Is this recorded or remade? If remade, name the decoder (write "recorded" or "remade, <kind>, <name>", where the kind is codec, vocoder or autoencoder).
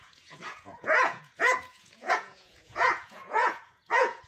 remade, vocoder, Vocos